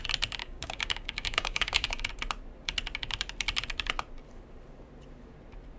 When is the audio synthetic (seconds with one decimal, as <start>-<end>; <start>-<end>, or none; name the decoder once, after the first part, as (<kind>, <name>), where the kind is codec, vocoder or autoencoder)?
0.4-2.1 (codec, DAC)